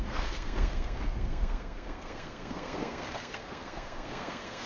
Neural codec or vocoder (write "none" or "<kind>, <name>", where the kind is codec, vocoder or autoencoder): codec, SNAC